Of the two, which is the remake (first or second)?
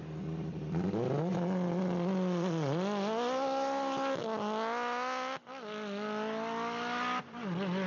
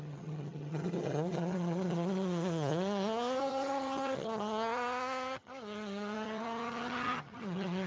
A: second